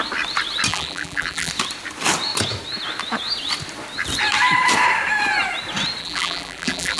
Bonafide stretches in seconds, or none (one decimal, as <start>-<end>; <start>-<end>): 0.0-0.7; 1.5-6.0